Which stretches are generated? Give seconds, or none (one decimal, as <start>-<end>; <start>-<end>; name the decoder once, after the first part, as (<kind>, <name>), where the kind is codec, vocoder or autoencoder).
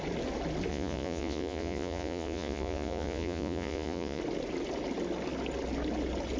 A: 0.7-4.2 (vocoder, Vocos)